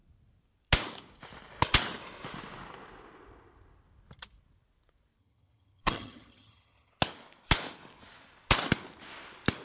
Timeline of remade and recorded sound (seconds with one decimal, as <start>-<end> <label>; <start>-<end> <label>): 0.0-5.2 recorded; 5.2-6.9 remade; 6.9-9.6 recorded